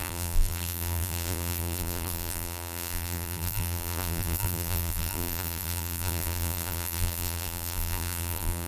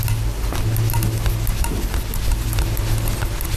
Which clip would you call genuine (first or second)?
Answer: second